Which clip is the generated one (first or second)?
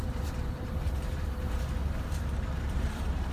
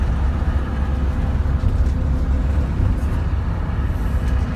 first